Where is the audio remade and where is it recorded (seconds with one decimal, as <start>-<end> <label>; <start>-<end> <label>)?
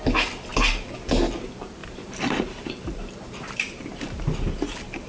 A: 0.0-1.8 recorded; 1.8-5.1 remade